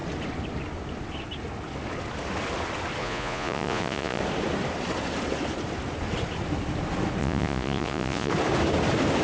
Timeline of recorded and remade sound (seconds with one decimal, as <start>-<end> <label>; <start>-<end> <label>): 0.0-3.0 recorded; 3.0-4.2 remade; 4.2-7.2 recorded; 7.2-8.3 remade; 8.3-9.2 recorded